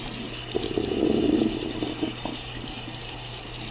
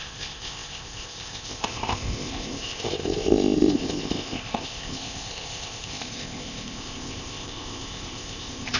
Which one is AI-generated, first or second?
second